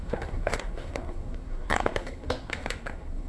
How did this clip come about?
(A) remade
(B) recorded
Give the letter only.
A